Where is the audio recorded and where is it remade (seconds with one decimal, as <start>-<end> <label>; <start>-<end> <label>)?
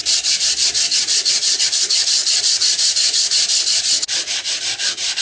0.0-2.2 recorded; 2.2-4.6 remade; 4.6-5.2 recorded